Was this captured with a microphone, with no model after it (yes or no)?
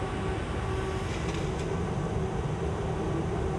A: yes